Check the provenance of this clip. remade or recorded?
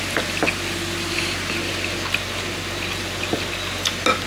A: recorded